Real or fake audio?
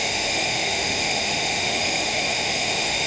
fake